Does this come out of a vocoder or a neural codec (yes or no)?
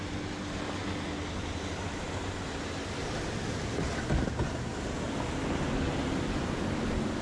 no